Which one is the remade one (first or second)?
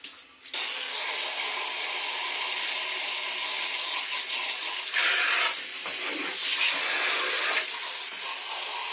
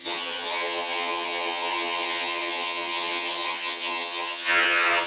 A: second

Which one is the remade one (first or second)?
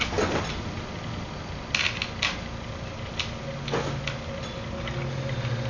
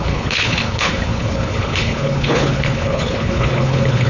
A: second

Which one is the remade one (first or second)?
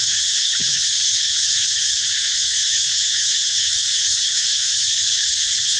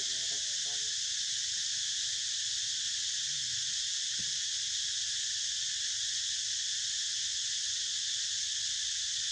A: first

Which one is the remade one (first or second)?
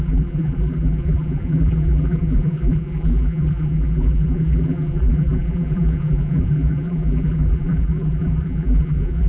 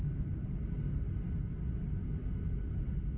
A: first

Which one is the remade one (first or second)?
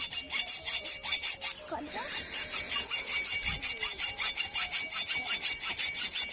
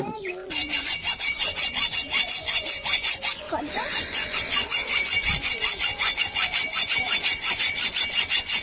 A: second